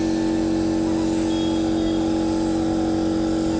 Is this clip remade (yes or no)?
no